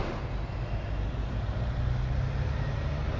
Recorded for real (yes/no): yes